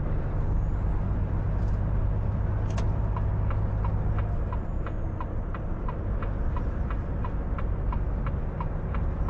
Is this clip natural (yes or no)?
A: yes